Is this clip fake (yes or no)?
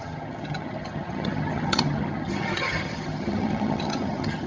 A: yes